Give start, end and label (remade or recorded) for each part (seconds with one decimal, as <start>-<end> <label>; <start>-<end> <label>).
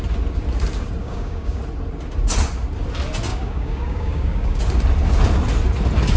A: 0.0-1.0 recorded; 1.0-1.6 remade; 1.6-3.3 recorded; 3.3-4.6 remade; 4.6-6.2 recorded